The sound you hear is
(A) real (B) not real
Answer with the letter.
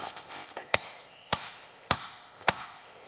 B